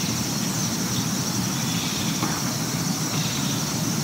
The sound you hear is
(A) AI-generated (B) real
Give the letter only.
B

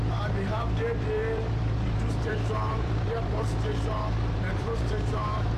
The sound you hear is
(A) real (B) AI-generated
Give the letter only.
B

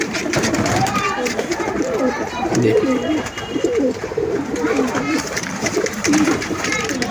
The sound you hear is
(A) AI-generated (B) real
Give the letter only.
A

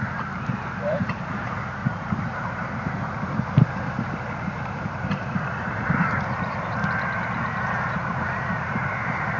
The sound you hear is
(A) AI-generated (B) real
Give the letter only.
A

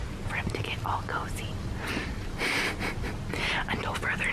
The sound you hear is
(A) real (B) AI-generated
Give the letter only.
A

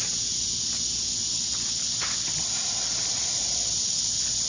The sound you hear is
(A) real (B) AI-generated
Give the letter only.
A